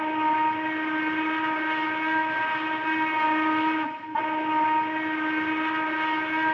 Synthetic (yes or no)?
no